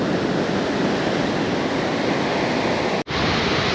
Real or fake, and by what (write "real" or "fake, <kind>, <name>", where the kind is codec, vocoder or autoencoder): real